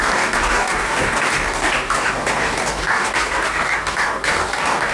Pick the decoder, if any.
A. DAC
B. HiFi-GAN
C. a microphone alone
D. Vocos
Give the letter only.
A